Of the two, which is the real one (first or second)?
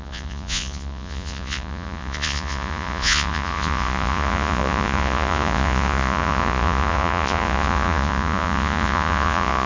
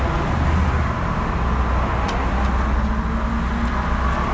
second